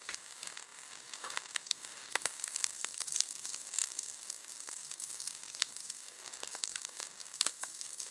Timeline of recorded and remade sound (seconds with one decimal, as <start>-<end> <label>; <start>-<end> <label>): 0.0-8.1 remade